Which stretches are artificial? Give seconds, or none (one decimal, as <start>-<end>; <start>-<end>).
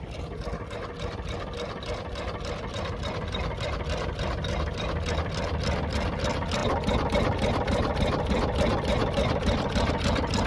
none